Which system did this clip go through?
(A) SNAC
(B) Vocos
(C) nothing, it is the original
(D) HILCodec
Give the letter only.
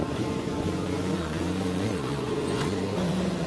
B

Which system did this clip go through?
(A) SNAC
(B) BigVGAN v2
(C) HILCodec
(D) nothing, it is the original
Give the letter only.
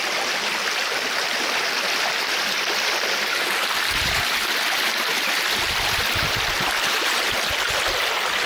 B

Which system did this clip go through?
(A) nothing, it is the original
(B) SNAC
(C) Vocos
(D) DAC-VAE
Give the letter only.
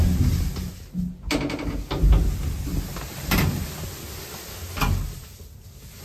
A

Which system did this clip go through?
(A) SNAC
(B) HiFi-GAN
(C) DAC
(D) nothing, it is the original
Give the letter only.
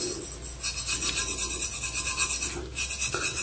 D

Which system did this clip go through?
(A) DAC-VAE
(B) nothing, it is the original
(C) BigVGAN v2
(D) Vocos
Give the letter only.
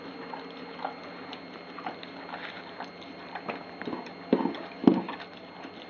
B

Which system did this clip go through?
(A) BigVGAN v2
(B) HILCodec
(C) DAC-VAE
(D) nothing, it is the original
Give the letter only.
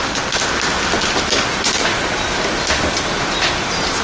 D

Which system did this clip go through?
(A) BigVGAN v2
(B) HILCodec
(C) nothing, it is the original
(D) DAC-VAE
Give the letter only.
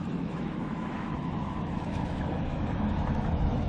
D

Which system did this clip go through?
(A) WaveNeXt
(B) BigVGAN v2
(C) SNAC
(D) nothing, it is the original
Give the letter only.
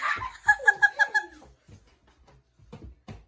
D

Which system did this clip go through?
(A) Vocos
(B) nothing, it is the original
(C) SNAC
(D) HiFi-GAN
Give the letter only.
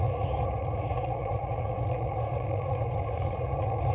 A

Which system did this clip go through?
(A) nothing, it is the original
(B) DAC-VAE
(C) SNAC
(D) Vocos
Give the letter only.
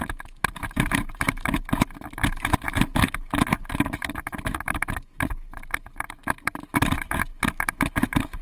B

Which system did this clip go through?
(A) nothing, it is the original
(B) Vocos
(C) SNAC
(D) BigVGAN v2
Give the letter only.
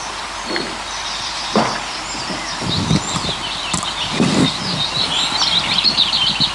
D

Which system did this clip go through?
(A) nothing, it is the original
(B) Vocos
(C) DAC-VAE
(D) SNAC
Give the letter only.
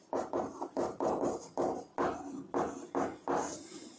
A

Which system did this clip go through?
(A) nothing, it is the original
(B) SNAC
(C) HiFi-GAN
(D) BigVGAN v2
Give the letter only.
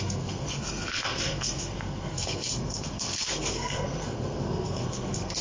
B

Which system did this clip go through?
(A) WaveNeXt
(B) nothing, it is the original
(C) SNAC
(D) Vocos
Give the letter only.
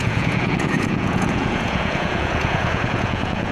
D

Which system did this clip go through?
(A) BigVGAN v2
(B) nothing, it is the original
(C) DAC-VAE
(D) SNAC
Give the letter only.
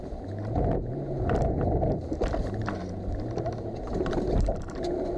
A